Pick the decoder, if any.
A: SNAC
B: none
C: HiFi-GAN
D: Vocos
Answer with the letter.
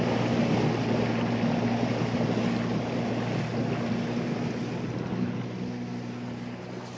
B